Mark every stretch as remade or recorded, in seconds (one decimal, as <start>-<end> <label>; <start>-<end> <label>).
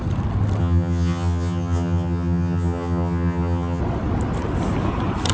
0.0-0.6 recorded; 0.6-3.8 remade; 3.8-5.3 recorded